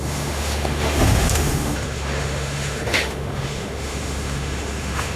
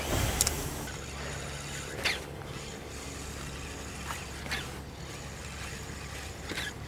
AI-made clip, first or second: first